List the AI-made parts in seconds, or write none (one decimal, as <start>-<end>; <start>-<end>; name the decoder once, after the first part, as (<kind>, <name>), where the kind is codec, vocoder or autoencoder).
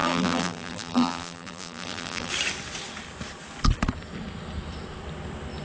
0.0-2.3 (vocoder, BigVGAN v2)